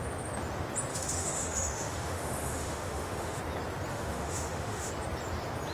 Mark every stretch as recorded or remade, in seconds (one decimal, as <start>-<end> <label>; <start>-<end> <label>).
0.0-0.9 recorded; 0.9-3.4 remade; 3.4-3.9 recorded; 3.9-4.9 remade; 4.9-5.7 recorded